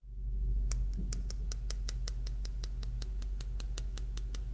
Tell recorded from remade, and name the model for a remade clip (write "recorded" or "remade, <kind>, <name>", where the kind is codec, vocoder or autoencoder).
recorded